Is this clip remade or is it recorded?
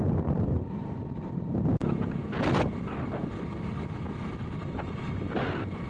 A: recorded